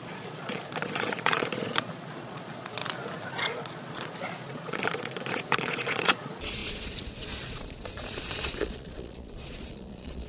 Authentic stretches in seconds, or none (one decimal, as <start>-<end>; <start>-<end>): 2.8-3.4